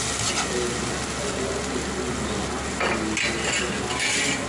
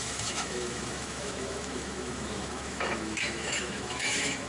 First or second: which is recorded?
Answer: first